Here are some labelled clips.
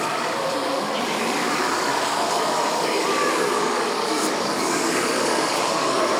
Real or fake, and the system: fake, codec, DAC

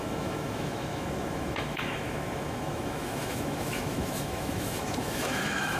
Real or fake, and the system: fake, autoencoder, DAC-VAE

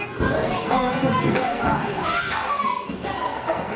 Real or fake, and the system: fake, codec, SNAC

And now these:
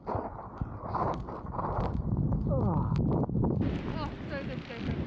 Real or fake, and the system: real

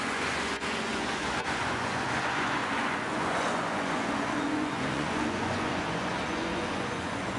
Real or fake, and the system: fake, vocoder, Vocos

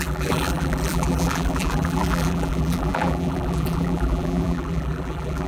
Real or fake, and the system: fake, vocoder, BigVGAN v2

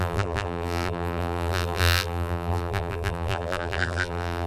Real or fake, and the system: fake, vocoder, BigVGAN v2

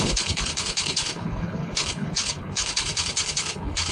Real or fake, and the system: fake, codec, HILCodec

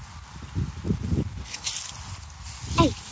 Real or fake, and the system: real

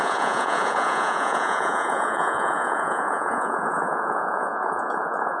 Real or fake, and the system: fake, vocoder, Vocos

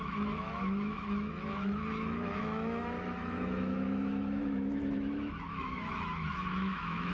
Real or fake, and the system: fake, autoencoder, DAC-VAE